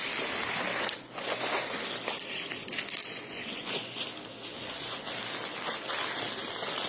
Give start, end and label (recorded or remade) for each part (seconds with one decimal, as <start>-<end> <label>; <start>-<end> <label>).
0.0-0.7 recorded; 0.7-1.8 remade; 1.8-3.0 recorded; 3.0-4.0 remade; 4.0-4.5 recorded; 4.5-5.0 remade; 5.0-6.9 recorded